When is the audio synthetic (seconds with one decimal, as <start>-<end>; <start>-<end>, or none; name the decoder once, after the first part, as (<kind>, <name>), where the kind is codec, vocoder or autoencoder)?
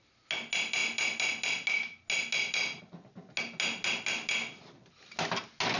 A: none